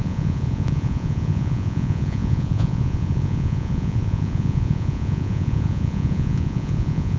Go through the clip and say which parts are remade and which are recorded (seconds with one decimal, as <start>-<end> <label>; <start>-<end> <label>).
0.0-7.2 remade

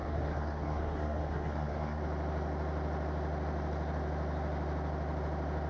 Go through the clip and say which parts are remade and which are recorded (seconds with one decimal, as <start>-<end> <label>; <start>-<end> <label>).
0.0-2.0 remade; 2.0-5.7 recorded

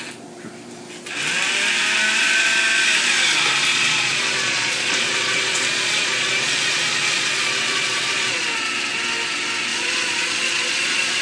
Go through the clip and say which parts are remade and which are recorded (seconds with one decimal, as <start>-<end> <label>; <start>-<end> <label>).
0.0-3.7 recorded; 3.7-8.4 remade; 8.4-9.7 recorded; 9.7-11.2 remade

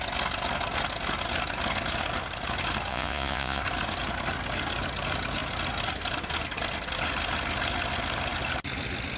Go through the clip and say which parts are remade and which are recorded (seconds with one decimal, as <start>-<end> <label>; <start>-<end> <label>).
0.0-2.9 recorded; 2.9-3.6 remade; 3.6-9.2 recorded

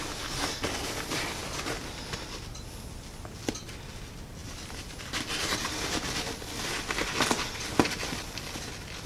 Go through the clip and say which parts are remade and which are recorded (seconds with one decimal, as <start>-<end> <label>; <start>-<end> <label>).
0.0-9.1 recorded

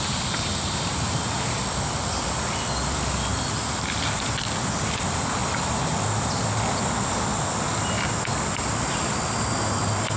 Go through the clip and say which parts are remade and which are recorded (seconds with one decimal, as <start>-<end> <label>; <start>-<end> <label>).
0.0-10.2 recorded

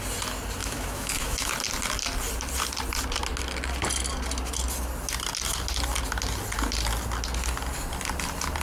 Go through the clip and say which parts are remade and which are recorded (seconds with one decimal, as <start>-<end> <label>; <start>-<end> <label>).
0.0-0.6 recorded; 0.6-1.5 remade; 1.5-8.6 recorded

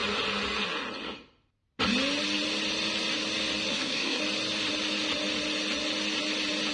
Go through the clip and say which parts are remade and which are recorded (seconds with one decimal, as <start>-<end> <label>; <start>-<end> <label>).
0.0-3.7 recorded; 3.7-4.2 remade; 4.2-6.7 recorded